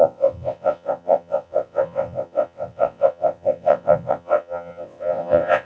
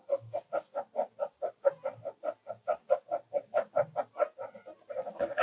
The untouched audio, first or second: second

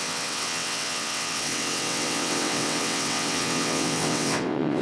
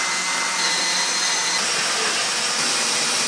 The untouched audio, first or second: second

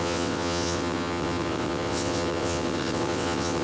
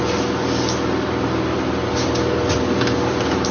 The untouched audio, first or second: second